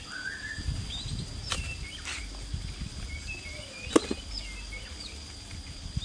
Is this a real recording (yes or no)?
yes